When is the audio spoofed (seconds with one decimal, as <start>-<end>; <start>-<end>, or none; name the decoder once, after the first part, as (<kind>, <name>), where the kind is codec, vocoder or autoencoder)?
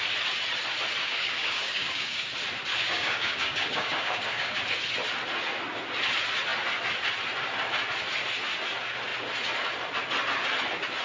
1.0-2.3 (codec, DAC); 2.7-4.6